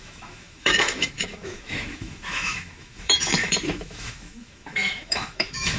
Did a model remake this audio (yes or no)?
yes